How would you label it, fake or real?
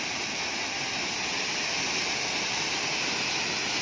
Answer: real